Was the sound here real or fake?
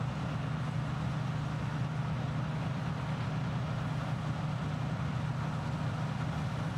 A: real